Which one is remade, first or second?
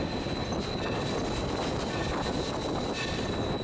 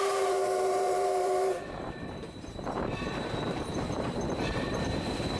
second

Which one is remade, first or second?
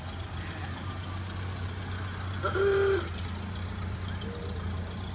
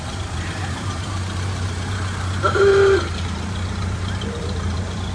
second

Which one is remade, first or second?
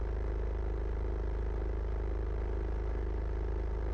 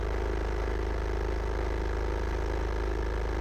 first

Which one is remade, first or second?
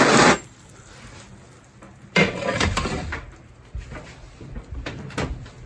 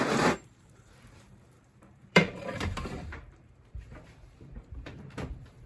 second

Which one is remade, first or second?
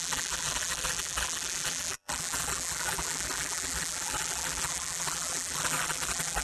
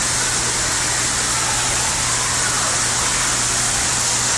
first